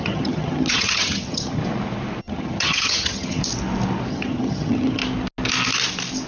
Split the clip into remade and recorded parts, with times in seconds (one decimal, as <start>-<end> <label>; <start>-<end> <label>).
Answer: 0.0-1.6 remade; 1.6-2.2 recorded; 2.2-3.4 remade; 3.4-4.1 recorded; 4.1-5.0 remade; 5.0-6.3 recorded